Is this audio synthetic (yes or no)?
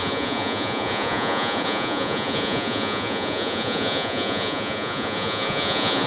yes